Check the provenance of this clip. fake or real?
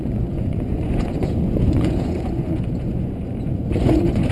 fake